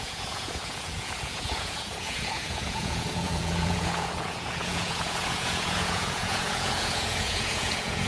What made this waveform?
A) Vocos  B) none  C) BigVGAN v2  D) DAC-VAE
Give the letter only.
A